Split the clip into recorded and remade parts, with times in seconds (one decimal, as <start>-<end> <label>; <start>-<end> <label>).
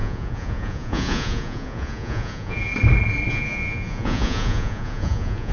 0.0-2.7 remade; 2.7-3.3 recorded; 3.3-5.5 remade